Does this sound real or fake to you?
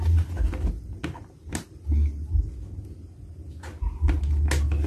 real